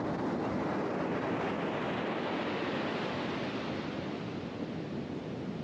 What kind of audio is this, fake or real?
real